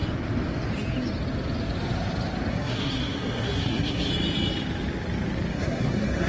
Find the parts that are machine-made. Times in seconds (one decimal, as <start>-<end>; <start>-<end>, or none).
2.5-4.1; 5.5-6.3